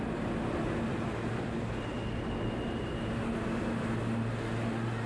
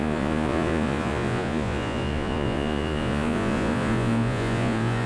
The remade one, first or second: second